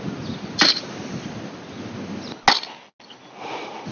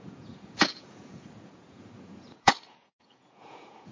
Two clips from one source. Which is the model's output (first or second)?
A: second